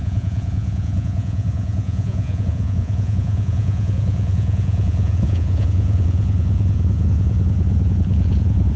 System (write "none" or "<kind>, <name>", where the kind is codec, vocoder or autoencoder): vocoder, Vocos